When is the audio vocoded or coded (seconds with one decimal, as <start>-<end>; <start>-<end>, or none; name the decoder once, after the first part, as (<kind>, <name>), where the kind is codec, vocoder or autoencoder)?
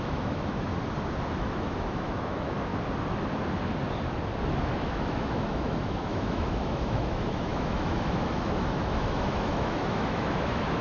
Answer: 0.0-0.7 (autoencoder, DAC-VAE); 1.4-2.7; 4.6-10.8